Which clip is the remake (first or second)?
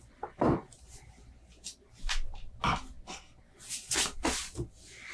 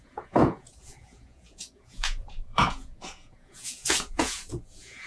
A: second